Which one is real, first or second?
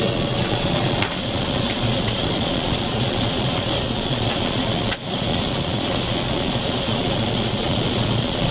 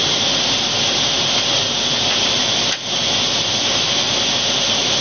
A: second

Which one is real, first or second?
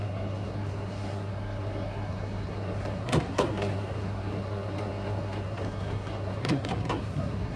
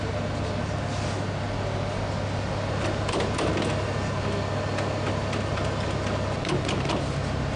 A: second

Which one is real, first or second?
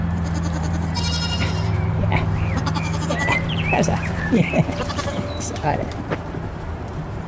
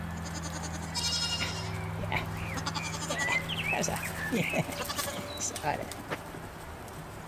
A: second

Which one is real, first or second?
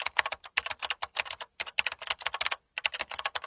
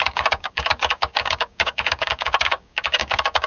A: first